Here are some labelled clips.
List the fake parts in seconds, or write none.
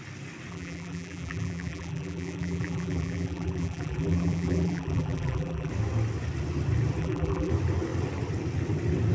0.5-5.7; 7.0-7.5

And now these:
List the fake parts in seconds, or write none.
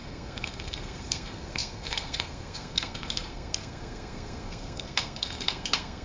0.0-6.0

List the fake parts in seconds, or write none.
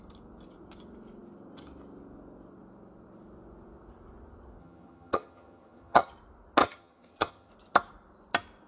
4.6-6.1; 6.6-7.5